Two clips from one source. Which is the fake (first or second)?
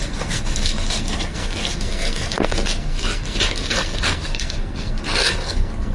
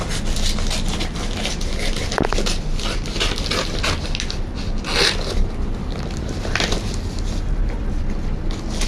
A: first